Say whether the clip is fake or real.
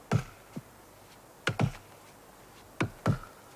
real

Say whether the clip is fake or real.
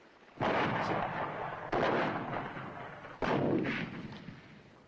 real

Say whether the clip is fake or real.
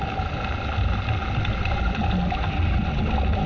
real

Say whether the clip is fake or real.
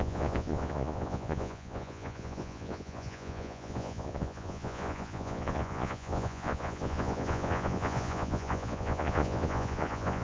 fake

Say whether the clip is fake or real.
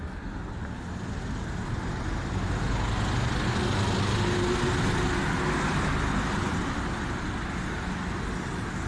real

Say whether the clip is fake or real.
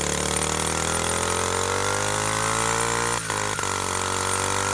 real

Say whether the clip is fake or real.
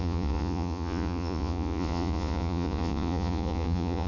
fake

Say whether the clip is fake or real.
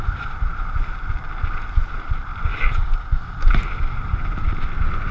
real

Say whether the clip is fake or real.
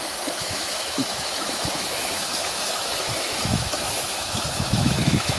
fake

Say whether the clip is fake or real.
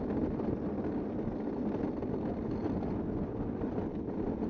real